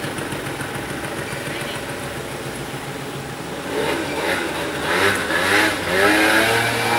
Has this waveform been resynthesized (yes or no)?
no